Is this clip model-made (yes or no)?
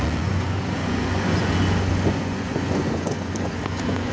yes